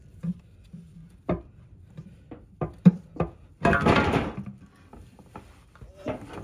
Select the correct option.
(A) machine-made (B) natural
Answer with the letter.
A